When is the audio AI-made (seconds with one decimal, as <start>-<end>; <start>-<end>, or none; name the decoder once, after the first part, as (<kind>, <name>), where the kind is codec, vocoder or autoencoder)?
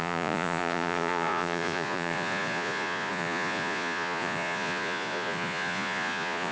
0.0-6.5 (vocoder, Vocos)